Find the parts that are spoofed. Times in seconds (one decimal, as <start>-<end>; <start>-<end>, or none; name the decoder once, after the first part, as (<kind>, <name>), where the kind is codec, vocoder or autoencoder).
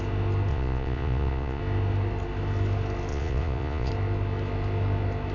0.5-1.6 (vocoder, Vocos); 3.1-3.9